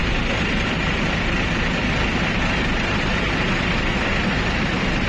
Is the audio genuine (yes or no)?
yes